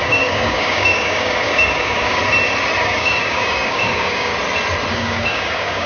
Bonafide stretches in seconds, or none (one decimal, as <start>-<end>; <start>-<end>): 2.2-2.8; 4.3-4.9